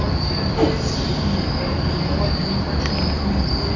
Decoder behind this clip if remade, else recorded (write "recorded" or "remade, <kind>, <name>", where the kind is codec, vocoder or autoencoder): recorded